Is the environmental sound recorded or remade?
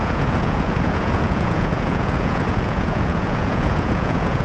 remade